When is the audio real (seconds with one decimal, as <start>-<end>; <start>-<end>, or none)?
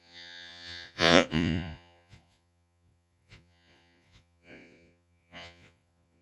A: none